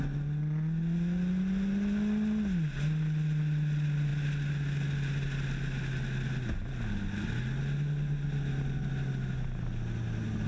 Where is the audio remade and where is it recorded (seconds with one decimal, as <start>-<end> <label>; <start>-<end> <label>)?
0.0-10.5 recorded